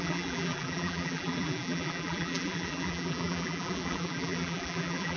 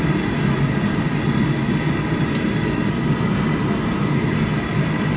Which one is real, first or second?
second